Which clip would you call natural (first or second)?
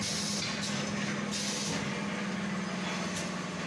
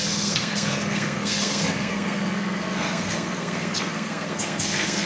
first